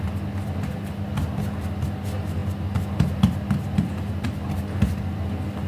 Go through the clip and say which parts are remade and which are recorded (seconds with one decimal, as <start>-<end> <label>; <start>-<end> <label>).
0.0-5.7 recorded